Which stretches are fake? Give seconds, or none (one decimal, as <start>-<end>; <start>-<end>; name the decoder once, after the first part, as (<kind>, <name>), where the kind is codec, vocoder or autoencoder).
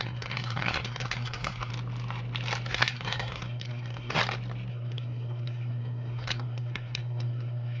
0.0-1.7 (codec, SNAC); 2.7-4.2; 4.7-7.8